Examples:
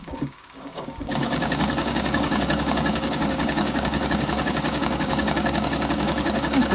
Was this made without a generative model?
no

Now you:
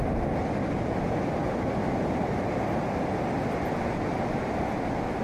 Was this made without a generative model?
yes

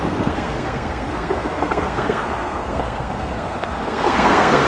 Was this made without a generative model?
no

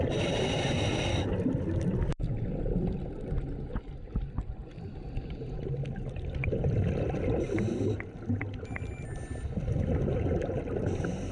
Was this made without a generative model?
yes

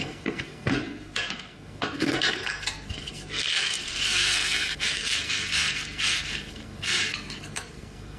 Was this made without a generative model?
no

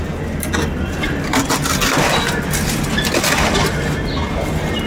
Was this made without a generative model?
yes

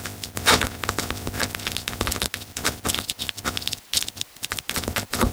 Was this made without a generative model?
yes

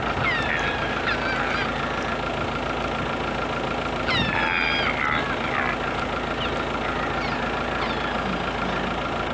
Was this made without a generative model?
yes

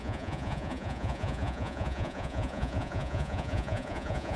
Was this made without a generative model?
no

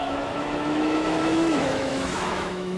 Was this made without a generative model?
no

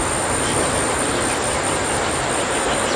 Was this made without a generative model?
yes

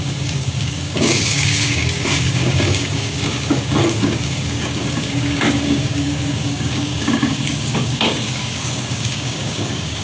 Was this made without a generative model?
no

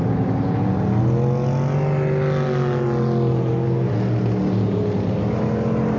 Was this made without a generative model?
yes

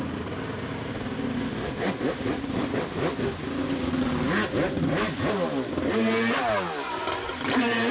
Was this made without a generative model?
yes